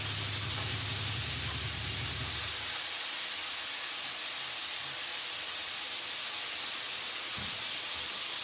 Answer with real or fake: real